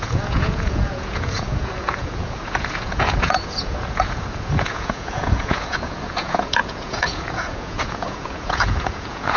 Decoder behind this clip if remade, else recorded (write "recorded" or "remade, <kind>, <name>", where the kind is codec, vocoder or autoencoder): remade, vocoder, Vocos